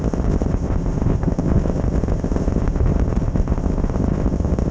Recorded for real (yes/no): no